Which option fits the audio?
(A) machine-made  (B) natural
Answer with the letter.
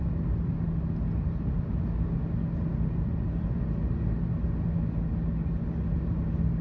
B